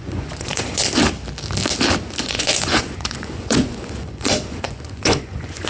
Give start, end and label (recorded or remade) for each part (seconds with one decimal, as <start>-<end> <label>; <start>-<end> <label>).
0.0-0.8 remade; 0.8-2.2 recorded; 2.2-5.7 remade